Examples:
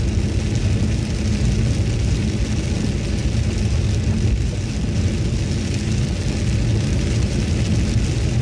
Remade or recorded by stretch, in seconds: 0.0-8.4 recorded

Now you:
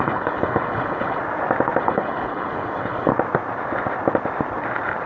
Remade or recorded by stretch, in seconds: 0.0-1.2 remade; 1.2-1.8 recorded; 1.8-3.1 remade; 3.1-5.1 recorded

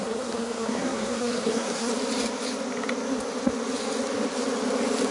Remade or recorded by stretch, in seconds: 0.0-1.9 remade; 1.9-5.1 recorded

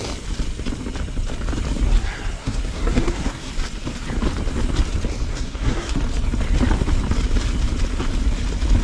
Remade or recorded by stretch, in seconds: 0.0-2.4 recorded; 2.4-3.5 remade; 3.5-5.3 recorded; 5.3-6.0 remade; 6.0-8.8 recorded

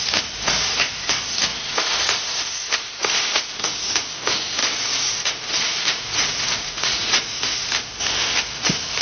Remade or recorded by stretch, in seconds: 0.0-4.6 recorded; 4.6-7.6 remade; 7.6-9.0 recorded